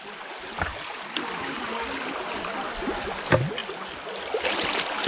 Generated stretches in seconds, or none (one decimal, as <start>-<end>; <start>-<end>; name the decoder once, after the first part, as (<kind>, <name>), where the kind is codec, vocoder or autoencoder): none